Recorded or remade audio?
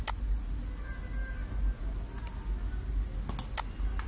recorded